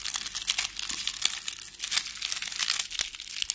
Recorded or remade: recorded